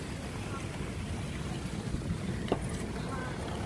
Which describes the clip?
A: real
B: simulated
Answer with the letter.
A